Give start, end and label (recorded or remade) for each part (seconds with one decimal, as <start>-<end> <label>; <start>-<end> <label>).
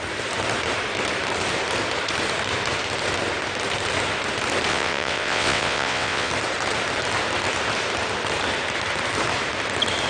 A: 0.0-4.7 recorded; 4.7-6.3 remade; 6.3-10.1 recorded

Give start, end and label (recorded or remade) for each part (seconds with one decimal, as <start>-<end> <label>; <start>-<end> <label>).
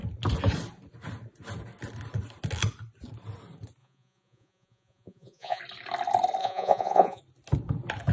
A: 0.0-3.8 recorded; 3.8-5.6 remade; 5.6-6.4 recorded; 6.4-7.2 remade; 7.2-8.1 recorded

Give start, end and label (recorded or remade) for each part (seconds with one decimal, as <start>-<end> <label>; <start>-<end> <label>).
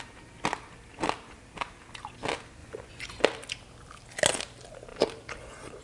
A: 0.0-2.6 recorded; 2.6-3.2 remade; 3.2-5.8 recorded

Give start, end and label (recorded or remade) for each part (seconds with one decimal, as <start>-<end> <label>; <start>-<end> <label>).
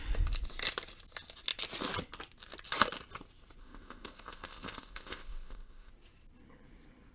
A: 0.0-3.6 recorded; 3.6-5.9 remade; 5.9-7.1 recorded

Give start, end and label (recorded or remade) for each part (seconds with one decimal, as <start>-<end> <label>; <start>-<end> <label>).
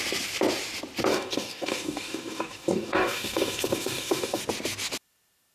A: 0.0-1.1 recorded; 1.1-4.4 remade; 4.4-5.5 recorded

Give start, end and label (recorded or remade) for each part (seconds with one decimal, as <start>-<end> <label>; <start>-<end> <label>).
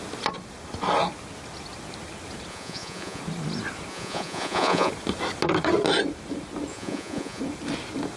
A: 0.0-2.5 recorded; 2.5-3.2 remade; 3.2-3.9 recorded; 3.9-4.9 remade; 4.9-6.7 recorded; 6.7-7.4 remade; 7.4-8.2 recorded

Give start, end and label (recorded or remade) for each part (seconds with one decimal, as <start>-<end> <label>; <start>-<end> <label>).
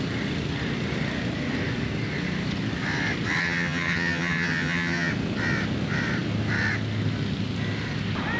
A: 0.0-3.4 recorded; 3.4-5.1 remade; 5.1-8.4 recorded